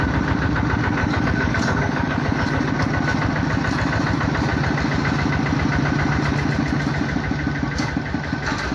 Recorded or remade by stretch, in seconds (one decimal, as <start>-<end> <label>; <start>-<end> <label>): 0.0-1.0 recorded; 1.0-2.7 remade; 2.7-8.7 recorded